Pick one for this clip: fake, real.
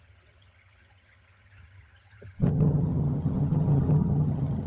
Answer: fake